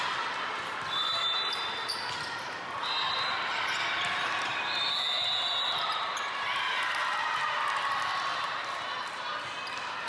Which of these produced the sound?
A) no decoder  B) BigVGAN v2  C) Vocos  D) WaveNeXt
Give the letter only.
A